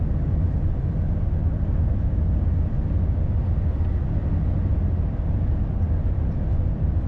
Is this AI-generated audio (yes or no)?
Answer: no